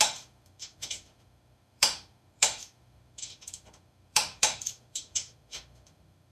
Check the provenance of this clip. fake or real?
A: fake